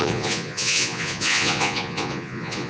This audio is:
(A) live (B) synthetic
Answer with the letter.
B